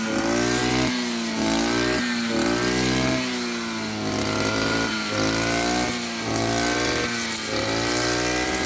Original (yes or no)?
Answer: yes